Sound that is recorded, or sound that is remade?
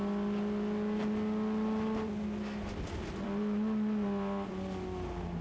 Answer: recorded